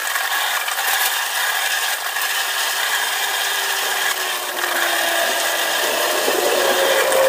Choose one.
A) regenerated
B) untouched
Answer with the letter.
A